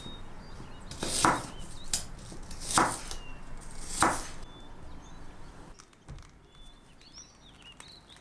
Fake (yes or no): no